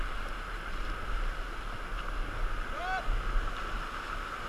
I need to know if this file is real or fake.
real